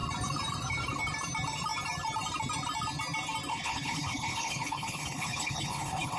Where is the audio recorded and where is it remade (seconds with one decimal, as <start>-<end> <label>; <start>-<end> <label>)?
0.0-3.5 recorded; 3.5-6.2 remade